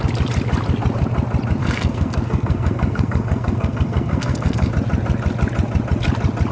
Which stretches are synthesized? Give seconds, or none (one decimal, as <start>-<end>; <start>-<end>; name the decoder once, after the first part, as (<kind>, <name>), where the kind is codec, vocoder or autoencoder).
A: 1.6-4.7 (codec, SNAC)